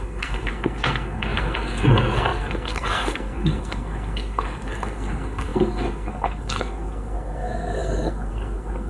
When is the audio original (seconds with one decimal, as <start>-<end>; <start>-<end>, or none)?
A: none